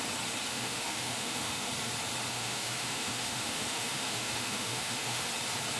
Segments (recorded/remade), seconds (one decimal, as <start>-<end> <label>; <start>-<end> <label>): 0.0-0.5 recorded; 0.5-1.7 remade; 1.7-2.3 recorded; 2.3-5.3 remade; 5.3-5.8 recorded